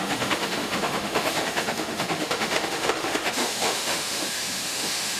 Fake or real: fake